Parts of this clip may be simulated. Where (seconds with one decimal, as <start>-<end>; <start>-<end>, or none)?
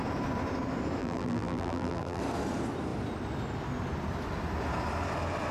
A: 1.0-2.2